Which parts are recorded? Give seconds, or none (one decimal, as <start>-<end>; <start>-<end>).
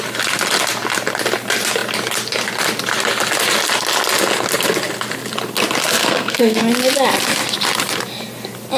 0.0-6.0; 6.6-8.8